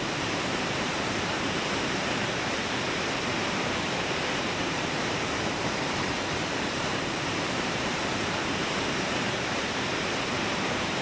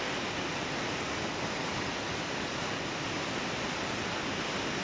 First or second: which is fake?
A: first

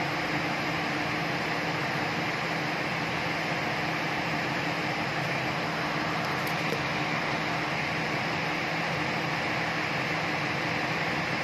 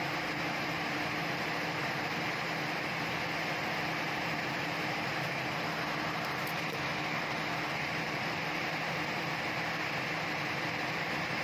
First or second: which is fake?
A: second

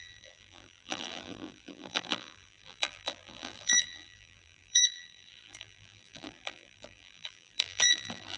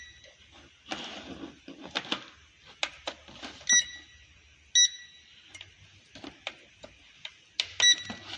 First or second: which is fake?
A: first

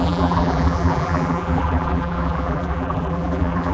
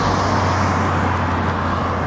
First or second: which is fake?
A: first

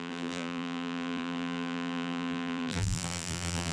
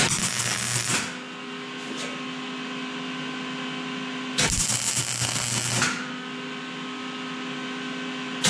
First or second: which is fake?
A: first